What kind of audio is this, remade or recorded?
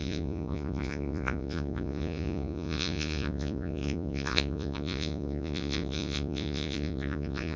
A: remade